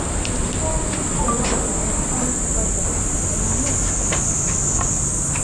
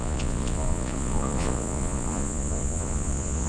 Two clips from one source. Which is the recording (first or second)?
first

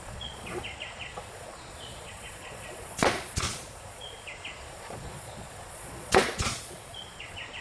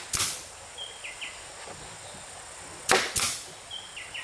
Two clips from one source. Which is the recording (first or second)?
second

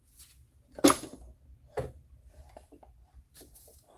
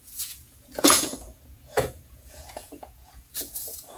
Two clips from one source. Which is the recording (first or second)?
first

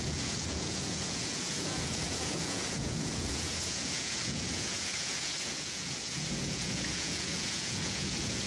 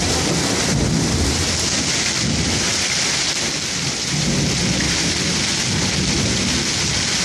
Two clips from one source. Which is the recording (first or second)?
second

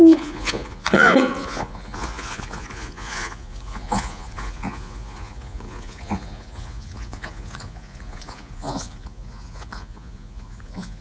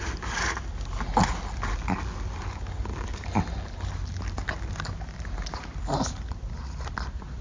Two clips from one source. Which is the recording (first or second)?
second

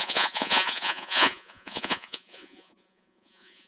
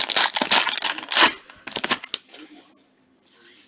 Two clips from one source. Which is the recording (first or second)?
second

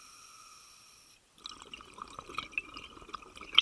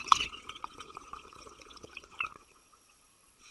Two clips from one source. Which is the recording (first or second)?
first